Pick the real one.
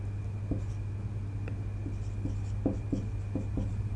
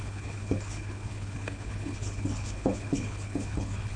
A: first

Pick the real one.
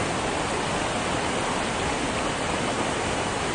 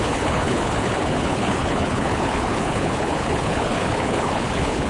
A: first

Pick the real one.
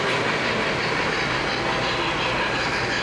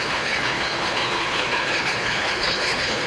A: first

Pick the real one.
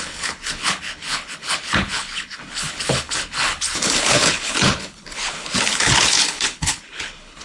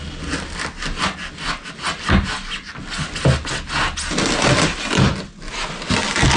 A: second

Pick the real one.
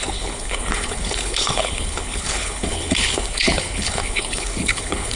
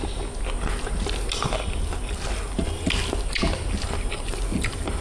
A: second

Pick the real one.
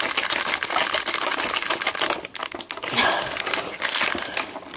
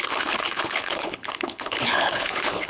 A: first